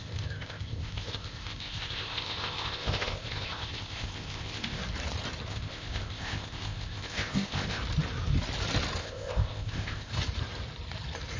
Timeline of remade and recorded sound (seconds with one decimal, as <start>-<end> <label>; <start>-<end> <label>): 0.0-4.8 remade; 4.8-5.5 recorded; 5.5-7.8 remade; 7.8-9.0 recorded; 9.0-10.1 remade; 10.1-11.4 recorded